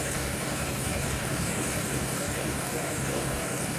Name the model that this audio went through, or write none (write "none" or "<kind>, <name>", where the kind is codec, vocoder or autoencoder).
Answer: codec, DAC